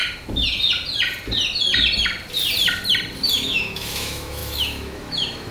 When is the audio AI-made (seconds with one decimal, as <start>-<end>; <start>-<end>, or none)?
3.3-5.5